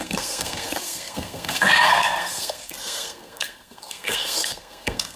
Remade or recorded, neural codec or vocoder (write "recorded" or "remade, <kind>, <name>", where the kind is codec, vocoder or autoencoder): remade, codec, SNAC